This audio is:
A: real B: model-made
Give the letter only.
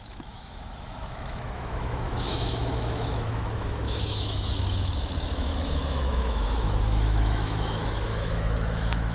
B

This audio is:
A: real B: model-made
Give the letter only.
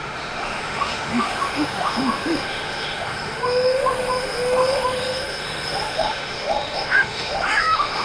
B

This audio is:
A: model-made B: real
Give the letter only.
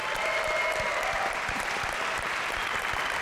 B